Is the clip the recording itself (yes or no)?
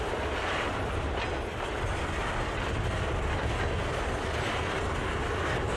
yes